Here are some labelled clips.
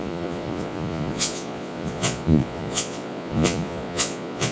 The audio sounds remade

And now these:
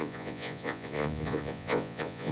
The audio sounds remade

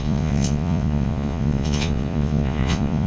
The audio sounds remade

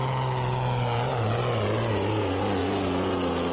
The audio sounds recorded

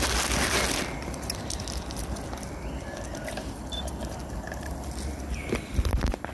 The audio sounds recorded